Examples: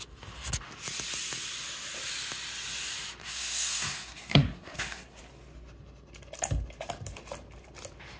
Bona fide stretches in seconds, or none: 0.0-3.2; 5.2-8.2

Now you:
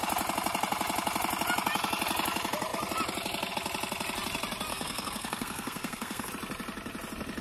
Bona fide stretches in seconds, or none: 0.0-4.7; 6.3-7.4

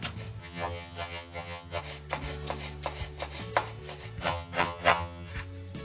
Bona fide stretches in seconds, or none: 0.0-0.4; 1.8-4.2; 5.3-5.8